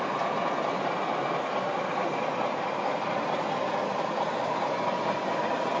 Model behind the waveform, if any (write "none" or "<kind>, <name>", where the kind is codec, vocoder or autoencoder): none